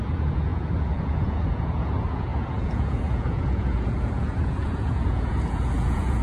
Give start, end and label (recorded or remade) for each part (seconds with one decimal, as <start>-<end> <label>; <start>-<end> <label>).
0.0-6.2 remade